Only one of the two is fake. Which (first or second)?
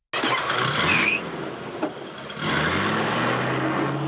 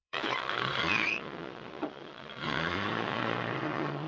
second